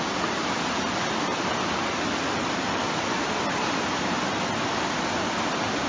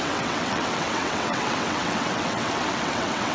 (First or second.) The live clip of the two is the first